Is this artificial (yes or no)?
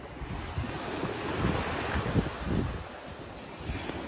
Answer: no